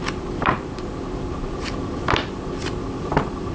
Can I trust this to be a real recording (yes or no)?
no